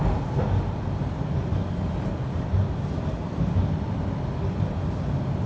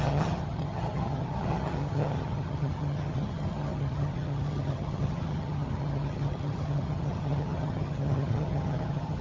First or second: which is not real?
second